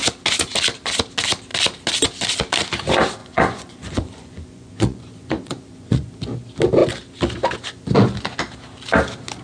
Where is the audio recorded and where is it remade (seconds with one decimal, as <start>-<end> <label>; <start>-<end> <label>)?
0.0-3.2 recorded; 3.2-6.1 remade; 6.1-9.4 recorded